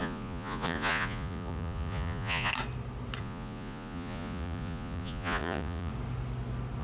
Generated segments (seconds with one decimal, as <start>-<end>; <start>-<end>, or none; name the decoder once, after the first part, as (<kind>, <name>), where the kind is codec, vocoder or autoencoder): 0.0-2.5 (vocoder, Vocos); 3.2-5.9

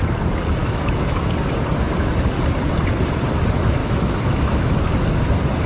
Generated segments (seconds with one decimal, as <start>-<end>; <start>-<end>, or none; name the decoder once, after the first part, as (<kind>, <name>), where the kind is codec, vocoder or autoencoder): 0.6-1.3 (autoencoder, DAC-VAE); 3.8-4.8